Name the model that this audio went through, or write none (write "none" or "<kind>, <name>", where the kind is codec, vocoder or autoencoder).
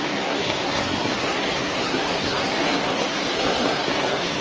codec, SNAC